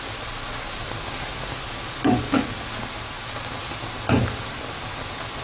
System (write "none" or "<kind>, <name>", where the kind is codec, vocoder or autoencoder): none